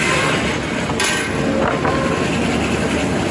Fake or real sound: real